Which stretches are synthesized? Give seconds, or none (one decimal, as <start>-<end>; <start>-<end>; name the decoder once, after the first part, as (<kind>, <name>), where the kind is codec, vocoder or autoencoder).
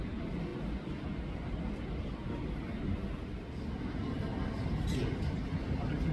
none